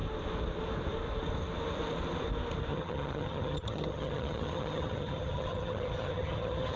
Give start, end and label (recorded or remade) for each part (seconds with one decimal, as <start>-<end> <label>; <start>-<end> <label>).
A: 0.0-2.7 recorded; 2.7-6.8 remade